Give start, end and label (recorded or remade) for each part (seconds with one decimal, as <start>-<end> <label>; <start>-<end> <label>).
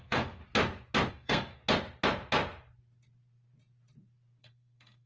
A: 0.0-0.4 remade; 0.4-1.1 recorded; 1.1-1.6 remade; 1.6-4.4 recorded; 4.4-5.1 remade